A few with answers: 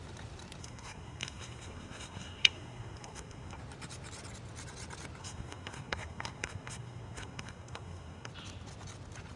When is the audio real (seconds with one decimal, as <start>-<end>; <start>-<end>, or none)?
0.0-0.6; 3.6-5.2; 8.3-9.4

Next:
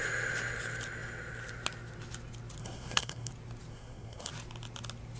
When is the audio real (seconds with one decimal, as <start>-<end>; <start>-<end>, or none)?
0.0-2.6; 3.3-3.7; 4.3-5.2

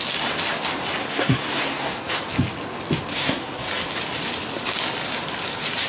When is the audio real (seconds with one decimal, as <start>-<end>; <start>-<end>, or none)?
0.0-1.0; 2.1-3.1; 3.7-5.9